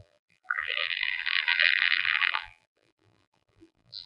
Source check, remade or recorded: remade